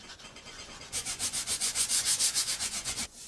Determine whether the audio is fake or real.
fake